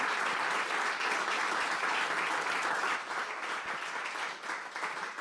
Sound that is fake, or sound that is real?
real